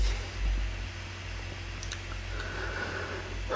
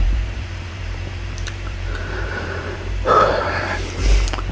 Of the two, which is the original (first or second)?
first